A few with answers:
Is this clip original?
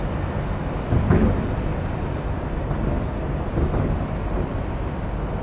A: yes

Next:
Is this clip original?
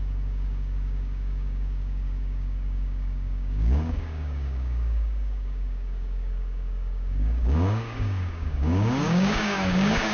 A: no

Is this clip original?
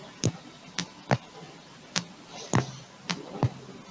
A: yes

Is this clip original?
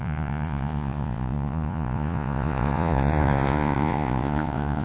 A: no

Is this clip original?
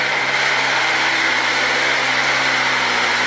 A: yes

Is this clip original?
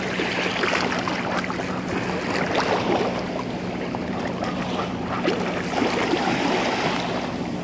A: yes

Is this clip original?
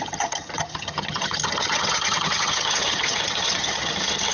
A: no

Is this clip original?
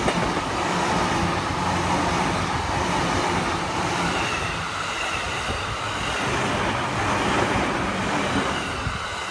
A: yes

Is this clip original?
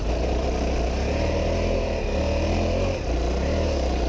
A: yes